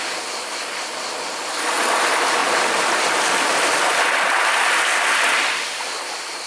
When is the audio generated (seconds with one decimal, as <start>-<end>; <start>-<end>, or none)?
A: none